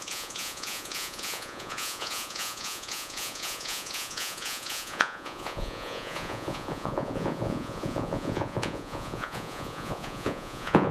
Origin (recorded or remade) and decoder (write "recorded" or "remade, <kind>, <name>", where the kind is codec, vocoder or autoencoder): remade, vocoder, Vocos